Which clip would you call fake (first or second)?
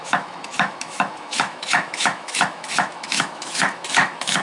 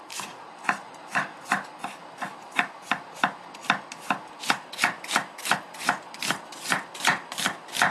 first